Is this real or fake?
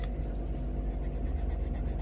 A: real